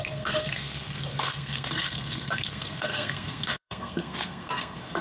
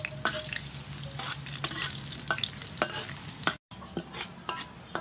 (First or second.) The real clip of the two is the second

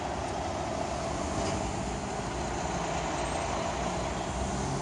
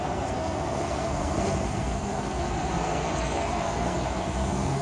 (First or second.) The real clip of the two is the first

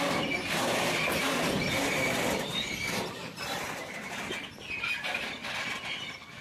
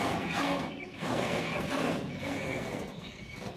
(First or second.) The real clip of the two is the first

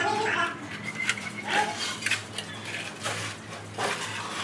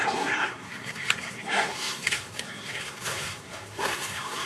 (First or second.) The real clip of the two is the first